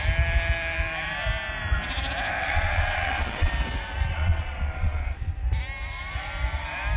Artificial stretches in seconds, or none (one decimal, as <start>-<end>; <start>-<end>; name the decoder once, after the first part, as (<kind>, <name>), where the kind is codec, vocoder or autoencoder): 2.4-3.5 (vocoder, Vocos); 4.1-5.3